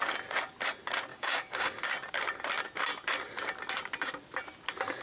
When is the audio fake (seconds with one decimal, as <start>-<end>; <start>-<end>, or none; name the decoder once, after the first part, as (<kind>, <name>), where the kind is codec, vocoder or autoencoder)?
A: 1.1-1.8 (codec, DAC)